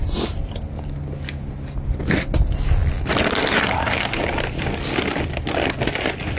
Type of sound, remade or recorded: recorded